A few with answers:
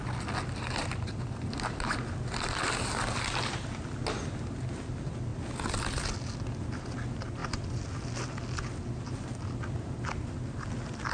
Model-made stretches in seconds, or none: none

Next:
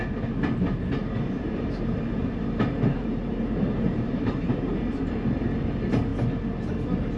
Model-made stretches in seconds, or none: 1.0-5.0 (vocoder, BigVGAN v2)

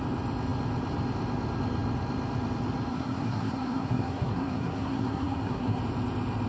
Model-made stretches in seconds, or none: 2.9-5.8 (codec, SNAC)

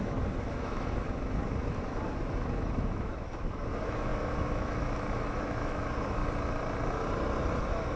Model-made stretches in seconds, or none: 0.0-6.2 (autoencoder, DAC-VAE); 7.6-8.0

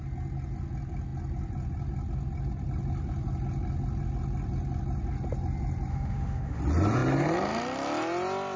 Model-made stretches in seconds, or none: 5.9-6.6 (autoencoder, DAC-VAE)